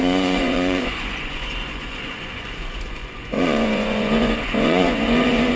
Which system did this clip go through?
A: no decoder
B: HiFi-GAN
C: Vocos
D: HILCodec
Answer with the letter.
C